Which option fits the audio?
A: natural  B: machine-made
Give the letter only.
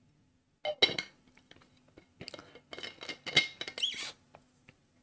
A